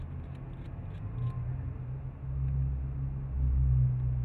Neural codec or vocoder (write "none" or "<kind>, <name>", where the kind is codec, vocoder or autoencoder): none